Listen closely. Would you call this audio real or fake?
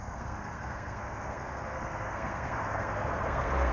fake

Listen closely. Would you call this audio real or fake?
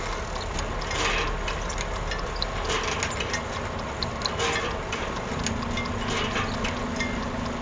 real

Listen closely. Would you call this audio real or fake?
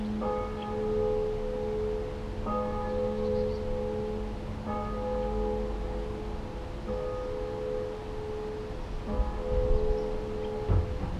real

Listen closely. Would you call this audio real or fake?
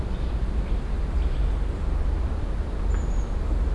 real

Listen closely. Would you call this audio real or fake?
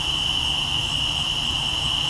real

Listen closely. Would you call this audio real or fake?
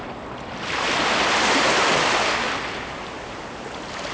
real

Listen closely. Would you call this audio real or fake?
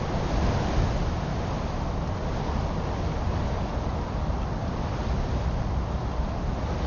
real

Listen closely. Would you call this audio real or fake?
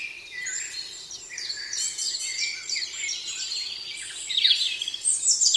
real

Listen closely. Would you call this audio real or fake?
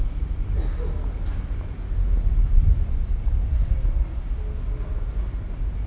real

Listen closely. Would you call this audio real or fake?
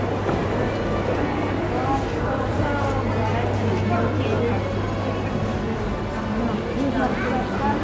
real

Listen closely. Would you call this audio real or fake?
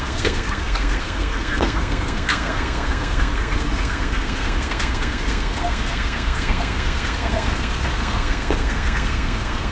fake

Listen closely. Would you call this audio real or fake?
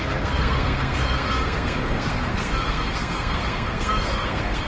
fake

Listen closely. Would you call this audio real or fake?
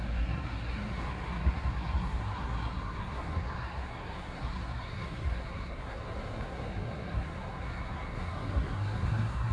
fake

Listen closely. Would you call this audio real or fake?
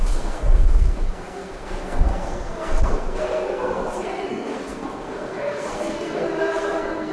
fake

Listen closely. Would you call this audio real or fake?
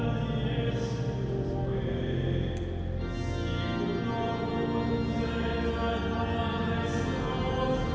real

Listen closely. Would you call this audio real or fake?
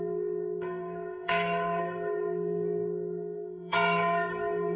fake